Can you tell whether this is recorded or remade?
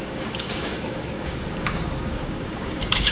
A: remade